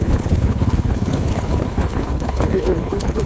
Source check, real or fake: fake